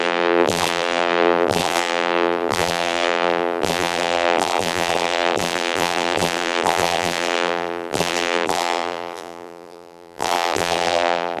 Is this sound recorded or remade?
remade